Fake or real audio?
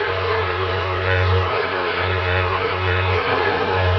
fake